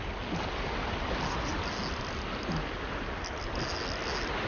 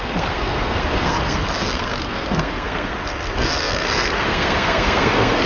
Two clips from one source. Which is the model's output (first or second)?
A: second